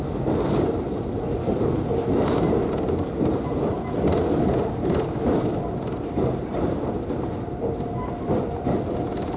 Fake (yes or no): no